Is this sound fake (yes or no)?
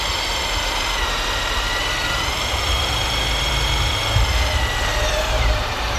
yes